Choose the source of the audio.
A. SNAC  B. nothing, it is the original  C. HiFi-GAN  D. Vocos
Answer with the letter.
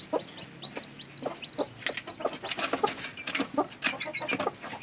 B